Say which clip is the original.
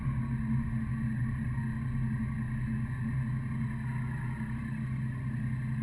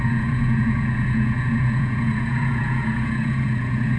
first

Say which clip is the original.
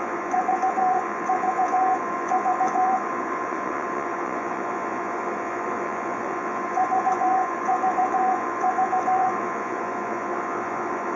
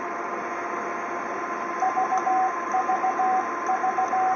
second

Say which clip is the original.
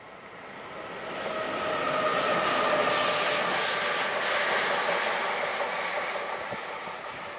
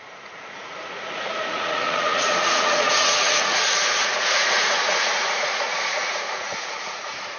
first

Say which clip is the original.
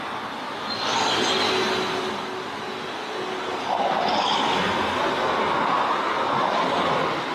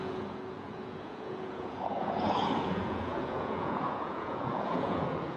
first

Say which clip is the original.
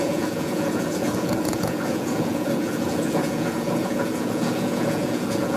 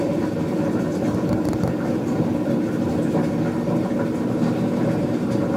second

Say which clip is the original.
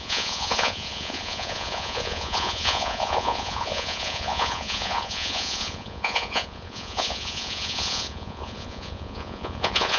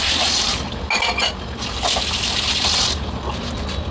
second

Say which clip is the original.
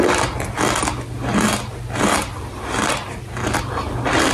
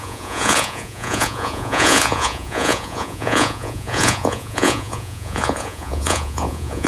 first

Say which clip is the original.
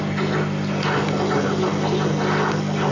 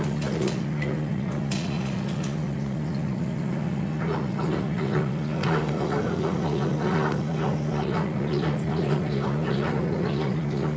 first